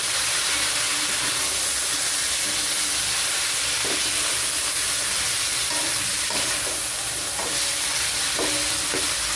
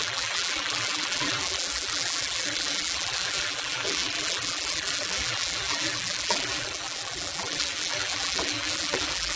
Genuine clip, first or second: first